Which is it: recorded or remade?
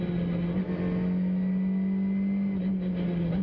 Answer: recorded